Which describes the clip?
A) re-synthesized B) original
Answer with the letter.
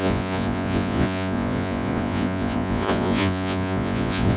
A